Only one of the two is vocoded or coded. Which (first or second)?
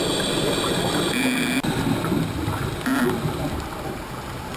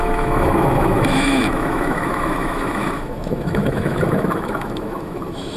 second